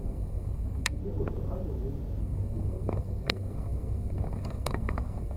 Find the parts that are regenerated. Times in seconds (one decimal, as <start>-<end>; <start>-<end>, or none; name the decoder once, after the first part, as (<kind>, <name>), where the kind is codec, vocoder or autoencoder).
0.0-1.0 (codec, SNAC); 2.2-5.4